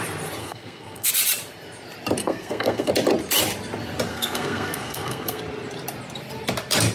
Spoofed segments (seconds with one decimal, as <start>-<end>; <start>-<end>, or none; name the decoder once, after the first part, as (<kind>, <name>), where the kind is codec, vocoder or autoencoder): 0.4-1.1 (codec, SNAC); 2.2-2.9; 4.1-5.4